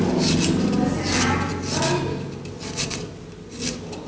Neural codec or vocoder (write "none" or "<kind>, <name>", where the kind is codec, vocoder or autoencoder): none